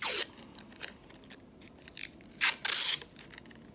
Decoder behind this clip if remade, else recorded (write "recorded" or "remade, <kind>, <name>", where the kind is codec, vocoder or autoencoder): recorded